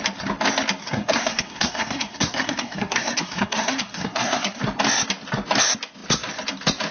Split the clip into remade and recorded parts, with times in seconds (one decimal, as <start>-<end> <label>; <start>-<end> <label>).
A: 0.0-0.8 recorded; 0.8-4.6 remade; 4.6-6.9 recorded